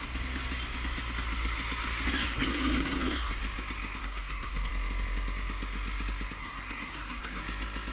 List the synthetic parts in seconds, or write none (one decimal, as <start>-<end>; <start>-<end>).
2.2-3.3; 4.0-4.7; 6.4-7.4